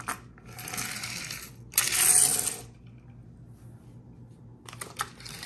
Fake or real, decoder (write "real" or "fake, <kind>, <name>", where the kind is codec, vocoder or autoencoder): real